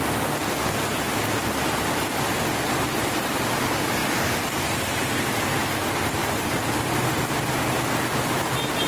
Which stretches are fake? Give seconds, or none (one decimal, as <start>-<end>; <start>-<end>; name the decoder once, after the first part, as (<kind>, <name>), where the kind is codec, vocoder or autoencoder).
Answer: 6.2-7.3 (vocoder, BigVGAN v2)